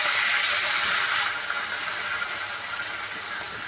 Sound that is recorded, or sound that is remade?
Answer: recorded